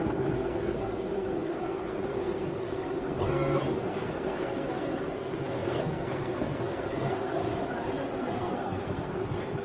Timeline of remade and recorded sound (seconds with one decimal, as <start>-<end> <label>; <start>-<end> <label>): 0.0-7.4 remade; 7.4-8.2 recorded; 8.2-9.6 remade